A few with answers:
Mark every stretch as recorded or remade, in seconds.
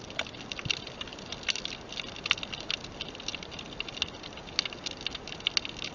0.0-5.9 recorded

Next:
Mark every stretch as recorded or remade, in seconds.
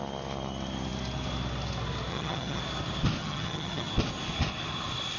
0.0-2.1 recorded; 2.1-2.6 remade; 2.6-3.2 recorded; 3.2-3.9 remade; 3.9-5.2 recorded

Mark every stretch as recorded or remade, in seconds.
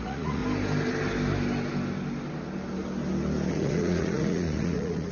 0.0-0.4 remade; 0.4-3.5 recorded; 3.5-5.1 remade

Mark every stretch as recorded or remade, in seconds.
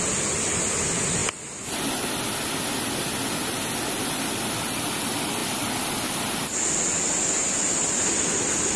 0.0-8.8 recorded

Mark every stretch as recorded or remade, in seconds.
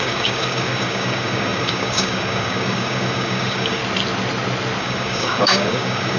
0.0-3.8 remade; 3.8-4.8 recorded; 4.8-6.2 remade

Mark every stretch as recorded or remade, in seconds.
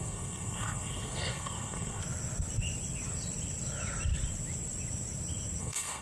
0.0-2.0 remade; 2.0-5.6 recorded; 5.6-6.0 remade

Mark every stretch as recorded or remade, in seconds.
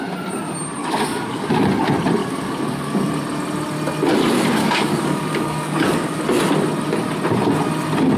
0.0-0.8 recorded; 0.8-1.5 remade; 1.5-2.2 recorded; 2.2-3.1 remade; 3.1-4.6 recorded; 4.6-6.2 remade; 6.2-8.2 recorded